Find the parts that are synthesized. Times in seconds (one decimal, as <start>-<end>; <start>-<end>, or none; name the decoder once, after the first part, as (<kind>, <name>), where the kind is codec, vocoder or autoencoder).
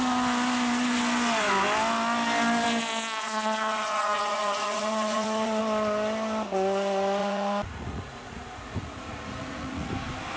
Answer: 3.2-5.6 (vocoder, Vocos); 7.2-9.9